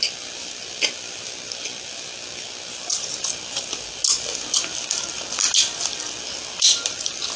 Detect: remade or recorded recorded